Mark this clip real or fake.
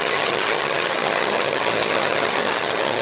fake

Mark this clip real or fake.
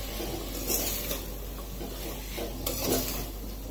real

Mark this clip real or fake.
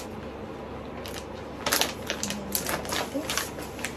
real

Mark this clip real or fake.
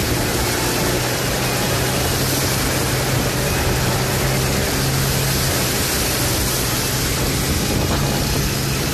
real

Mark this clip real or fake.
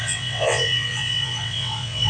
fake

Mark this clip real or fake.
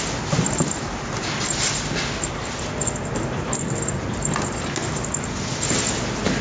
real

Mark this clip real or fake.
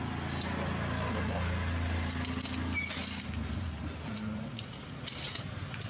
real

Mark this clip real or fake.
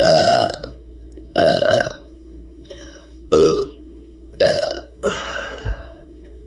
fake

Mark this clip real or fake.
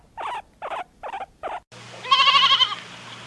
real